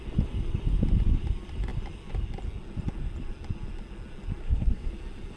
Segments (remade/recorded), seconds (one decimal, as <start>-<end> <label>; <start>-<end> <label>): 0.0-4.4 recorded; 4.4-4.9 remade; 4.9-5.4 recorded